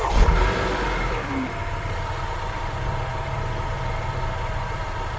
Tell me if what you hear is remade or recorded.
remade